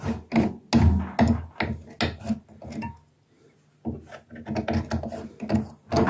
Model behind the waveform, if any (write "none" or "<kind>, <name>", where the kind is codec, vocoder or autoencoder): none